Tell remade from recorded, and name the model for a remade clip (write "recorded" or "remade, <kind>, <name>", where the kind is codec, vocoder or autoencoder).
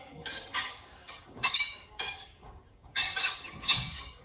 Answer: remade, codec, DAC